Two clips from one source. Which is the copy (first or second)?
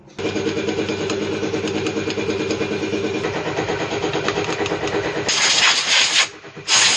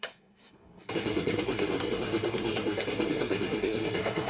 second